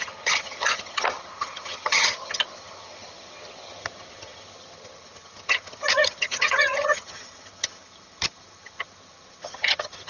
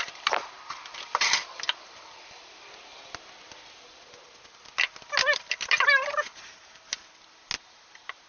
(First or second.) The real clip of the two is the second